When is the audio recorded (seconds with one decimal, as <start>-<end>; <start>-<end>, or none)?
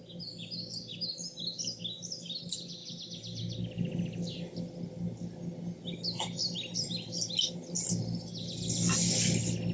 0.0-9.7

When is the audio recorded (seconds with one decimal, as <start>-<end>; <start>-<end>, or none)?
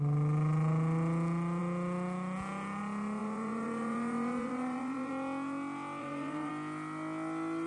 0.0-3.2; 5.1-6.0; 6.5-7.7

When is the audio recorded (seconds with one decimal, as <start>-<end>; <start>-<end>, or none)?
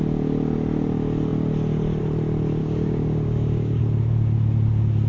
0.0-2.6; 3.8-5.1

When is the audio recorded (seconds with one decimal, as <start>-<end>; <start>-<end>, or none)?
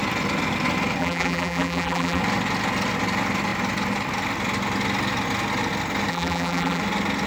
0.0-1.0; 2.2-6.1; 6.8-7.3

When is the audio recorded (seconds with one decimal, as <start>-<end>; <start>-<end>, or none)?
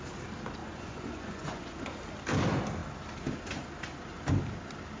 0.0-0.6; 1.7-5.0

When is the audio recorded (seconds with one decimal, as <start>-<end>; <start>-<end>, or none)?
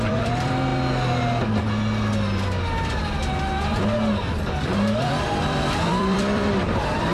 0.7-5.0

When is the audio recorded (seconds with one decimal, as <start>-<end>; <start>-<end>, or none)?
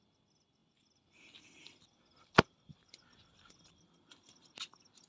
0.0-5.1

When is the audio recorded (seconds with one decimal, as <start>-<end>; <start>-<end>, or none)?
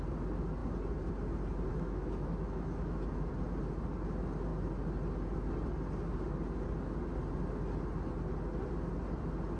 0.0-1.7; 3.3-9.6